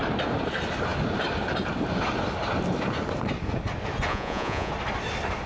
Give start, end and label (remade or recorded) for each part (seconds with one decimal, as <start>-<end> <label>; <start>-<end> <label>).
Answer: 0.0-4.1 recorded; 4.1-4.7 remade; 4.7-5.5 recorded